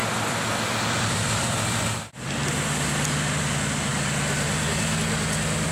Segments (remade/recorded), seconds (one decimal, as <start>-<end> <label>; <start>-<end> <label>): 0.0-3.4 remade; 3.4-5.7 recorded